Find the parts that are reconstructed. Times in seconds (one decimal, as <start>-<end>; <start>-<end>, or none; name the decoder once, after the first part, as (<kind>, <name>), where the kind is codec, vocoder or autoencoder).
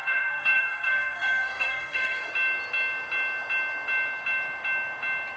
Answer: 0.0-2.3 (codec, SNAC)